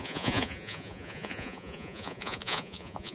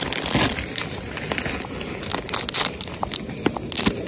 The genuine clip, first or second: second